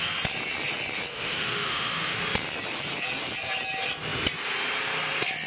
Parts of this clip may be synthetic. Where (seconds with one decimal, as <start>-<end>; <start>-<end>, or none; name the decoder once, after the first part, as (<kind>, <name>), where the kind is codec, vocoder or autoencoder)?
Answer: 1.1-2.2 (autoencoder, DAC-VAE)